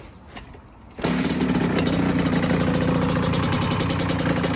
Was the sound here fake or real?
real